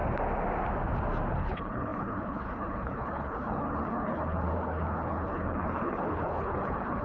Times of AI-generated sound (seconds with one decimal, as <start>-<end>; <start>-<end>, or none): 1.3-7.0